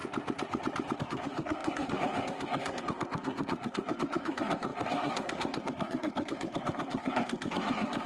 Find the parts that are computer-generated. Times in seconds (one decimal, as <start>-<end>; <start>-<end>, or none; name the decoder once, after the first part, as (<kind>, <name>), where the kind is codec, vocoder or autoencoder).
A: 1.0-8.1 (codec, SNAC)